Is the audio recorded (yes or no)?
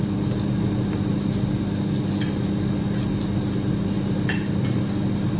yes